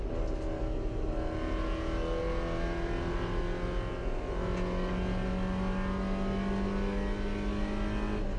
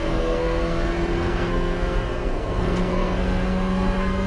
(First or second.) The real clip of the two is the first